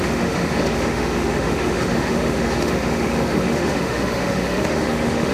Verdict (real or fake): fake